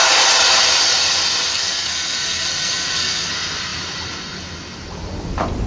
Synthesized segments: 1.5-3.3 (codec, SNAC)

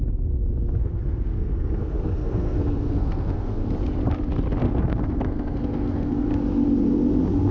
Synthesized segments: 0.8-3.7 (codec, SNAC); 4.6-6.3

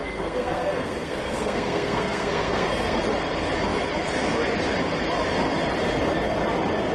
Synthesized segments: 0.0-3.0 (codec, SNAC)

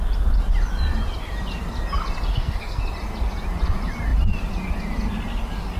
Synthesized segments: 2.3-2.8 (codec, SNAC)

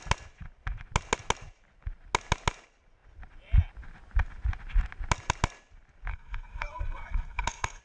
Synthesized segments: 6.1-7.8 (codec, SNAC)